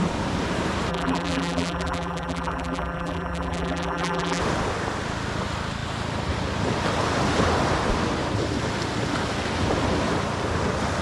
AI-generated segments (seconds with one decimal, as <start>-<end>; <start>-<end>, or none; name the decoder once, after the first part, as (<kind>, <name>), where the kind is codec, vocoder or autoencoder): 0.9-4.4 (vocoder, BigVGAN v2)